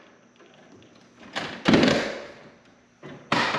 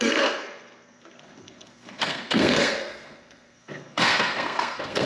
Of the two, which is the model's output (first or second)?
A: second